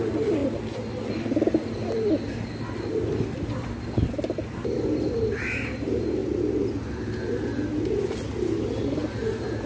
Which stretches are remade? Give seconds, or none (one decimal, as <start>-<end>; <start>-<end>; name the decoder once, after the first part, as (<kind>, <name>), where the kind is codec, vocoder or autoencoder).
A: 0.0-0.4 (vocoder, BigVGAN v2); 2.9-6.2; 8.8-9.7